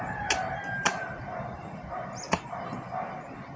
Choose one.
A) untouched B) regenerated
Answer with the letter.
A